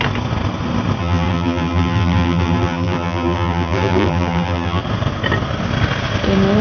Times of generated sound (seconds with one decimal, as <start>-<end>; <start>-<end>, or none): 1.0-4.8